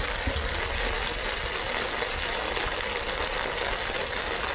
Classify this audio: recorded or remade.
recorded